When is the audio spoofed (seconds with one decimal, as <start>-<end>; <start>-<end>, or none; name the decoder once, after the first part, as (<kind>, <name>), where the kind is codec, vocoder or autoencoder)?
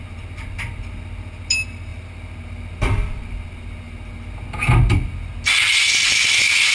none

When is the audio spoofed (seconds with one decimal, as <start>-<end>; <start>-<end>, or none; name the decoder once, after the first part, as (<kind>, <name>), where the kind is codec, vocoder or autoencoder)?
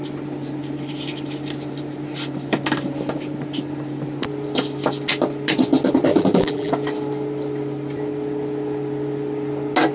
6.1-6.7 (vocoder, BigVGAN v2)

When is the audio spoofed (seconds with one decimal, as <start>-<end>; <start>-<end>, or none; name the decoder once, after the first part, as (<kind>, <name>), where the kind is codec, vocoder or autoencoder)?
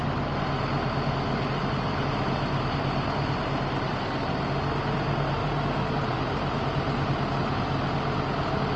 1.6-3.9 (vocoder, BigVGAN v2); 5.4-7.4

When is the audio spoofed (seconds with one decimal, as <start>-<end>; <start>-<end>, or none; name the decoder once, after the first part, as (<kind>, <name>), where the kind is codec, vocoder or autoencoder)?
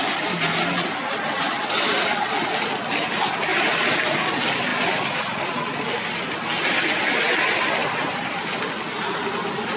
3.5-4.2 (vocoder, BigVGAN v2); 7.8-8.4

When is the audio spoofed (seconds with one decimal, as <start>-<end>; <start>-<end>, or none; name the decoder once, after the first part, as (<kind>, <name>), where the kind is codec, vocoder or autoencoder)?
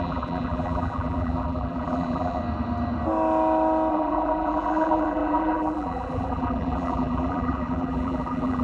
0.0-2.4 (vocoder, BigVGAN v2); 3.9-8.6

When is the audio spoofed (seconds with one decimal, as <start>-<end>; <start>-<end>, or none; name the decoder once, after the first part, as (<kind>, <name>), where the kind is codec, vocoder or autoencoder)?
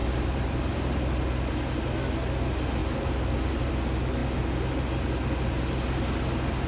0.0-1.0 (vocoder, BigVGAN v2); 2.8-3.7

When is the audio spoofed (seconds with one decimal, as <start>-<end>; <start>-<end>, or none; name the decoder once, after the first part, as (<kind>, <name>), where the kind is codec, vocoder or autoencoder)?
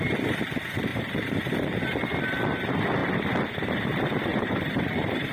0.9-1.8 (vocoder, BigVGAN v2); 4.3-5.3